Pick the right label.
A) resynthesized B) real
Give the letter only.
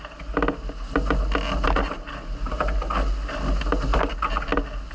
B